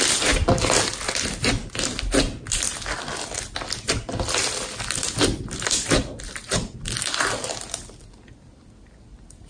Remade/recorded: recorded